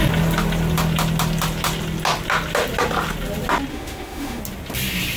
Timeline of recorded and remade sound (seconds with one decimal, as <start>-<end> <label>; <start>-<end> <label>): 0.0-3.7 recorded; 3.7-4.4 remade; 4.4-5.2 recorded

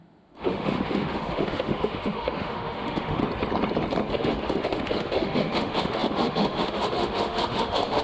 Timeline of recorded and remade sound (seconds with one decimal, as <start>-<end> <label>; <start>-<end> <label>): 0.0-3.2 remade; 3.2-4.1 recorded; 4.1-8.0 remade

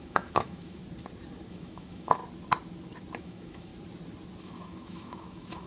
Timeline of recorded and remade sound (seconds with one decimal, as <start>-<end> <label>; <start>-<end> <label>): 0.0-0.8 remade; 0.8-1.5 recorded; 1.5-2.2 remade; 2.2-3.2 recorded; 3.2-3.7 remade; 3.7-4.4 recorded; 4.4-5.7 remade

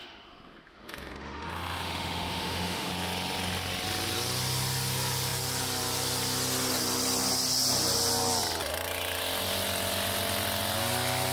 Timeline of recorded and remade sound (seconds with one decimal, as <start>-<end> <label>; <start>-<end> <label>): 0.0-2.9 remade; 2.9-11.3 recorded

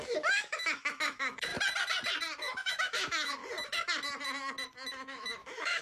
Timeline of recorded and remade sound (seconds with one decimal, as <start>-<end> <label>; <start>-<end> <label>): 0.0-1.5 remade; 1.5-2.4 recorded; 2.4-3.4 remade; 3.4-4.9 recorded; 4.9-5.8 remade